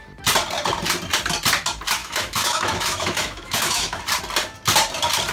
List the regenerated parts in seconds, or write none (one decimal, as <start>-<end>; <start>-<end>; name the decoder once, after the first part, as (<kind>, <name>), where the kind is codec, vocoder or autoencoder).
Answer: 2.0-4.0 (autoencoder, DAC-VAE)